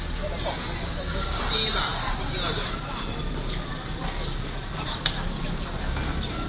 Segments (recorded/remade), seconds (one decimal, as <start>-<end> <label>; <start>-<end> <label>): 0.0-0.8 recorded; 0.8-1.4 remade; 1.4-6.5 recorded